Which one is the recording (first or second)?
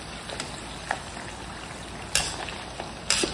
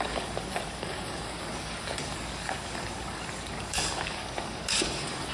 first